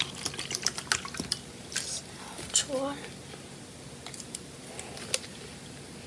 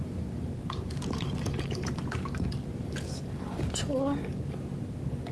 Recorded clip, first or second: first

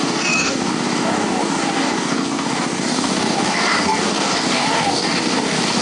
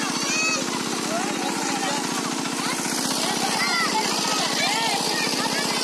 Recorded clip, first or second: second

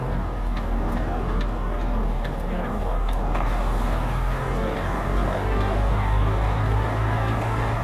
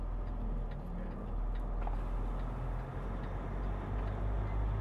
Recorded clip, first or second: second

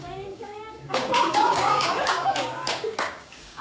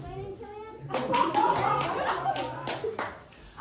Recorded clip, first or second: second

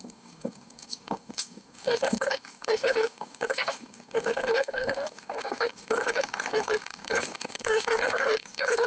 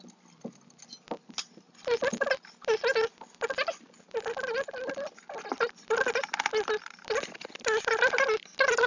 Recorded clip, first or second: second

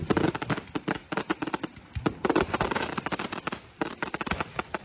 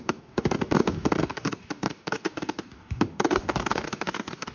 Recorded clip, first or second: first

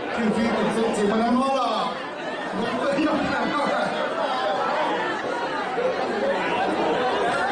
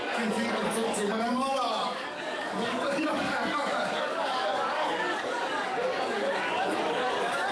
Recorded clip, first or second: first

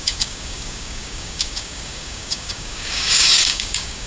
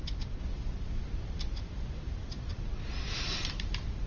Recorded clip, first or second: second